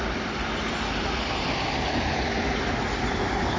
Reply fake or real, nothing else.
real